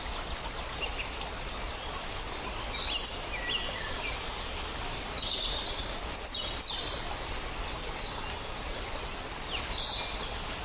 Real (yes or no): yes